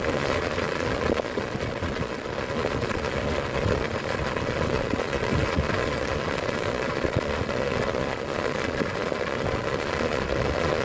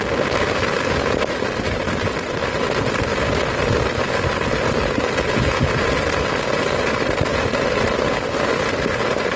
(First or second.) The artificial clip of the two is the first